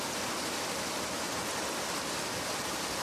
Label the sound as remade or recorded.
recorded